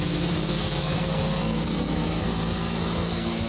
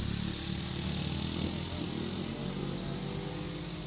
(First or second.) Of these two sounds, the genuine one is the second